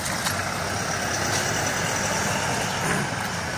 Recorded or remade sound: recorded